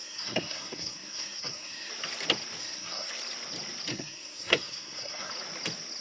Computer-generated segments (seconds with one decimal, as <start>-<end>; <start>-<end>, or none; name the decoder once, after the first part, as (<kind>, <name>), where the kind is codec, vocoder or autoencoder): 0.0-1.9 (codec, SNAC); 2.6-3.1; 3.9-5.3

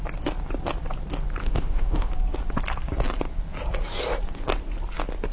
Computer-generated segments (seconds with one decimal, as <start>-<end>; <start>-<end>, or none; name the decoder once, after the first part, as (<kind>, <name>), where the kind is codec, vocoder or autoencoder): 1.4-2.1 (autoencoder, DAC-VAE)

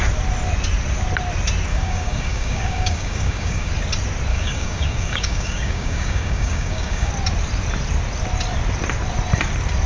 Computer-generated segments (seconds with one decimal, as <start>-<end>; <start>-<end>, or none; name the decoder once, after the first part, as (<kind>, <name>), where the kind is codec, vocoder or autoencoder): 1.7-3.7 (codec, DAC); 4.3-7.1

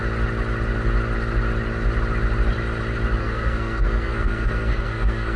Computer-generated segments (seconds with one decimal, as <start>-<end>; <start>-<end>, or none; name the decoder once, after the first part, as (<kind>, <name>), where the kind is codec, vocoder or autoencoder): 3.2-5.4 (codec, SNAC)

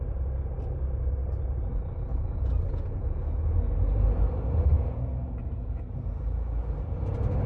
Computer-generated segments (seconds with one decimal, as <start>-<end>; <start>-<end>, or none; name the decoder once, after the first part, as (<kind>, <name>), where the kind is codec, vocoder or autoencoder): 2.1-3.6 (vocoder, Vocos); 4.7-5.8

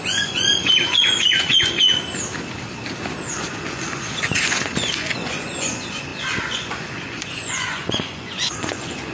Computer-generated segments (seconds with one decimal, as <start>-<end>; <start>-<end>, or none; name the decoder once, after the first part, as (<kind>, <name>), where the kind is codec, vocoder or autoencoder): 0.0-1.9 (vocoder, Vocos); 3.3-9.1

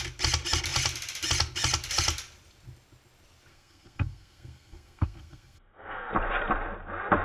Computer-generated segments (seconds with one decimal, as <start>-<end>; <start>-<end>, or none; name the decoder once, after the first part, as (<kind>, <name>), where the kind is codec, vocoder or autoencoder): 3.5-6.1 (codec, SNAC)

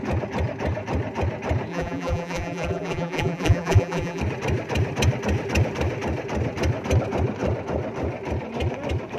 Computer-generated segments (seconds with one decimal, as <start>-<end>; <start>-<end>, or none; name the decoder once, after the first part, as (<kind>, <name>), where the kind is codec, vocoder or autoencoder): 1.7-4.2 (vocoder, BigVGAN v2)